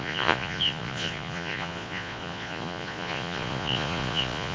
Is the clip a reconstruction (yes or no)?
yes